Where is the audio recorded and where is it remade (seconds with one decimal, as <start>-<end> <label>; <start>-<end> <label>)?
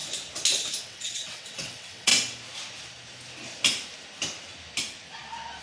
0.0-0.8 recorded; 0.8-2.1 remade; 2.1-5.6 recorded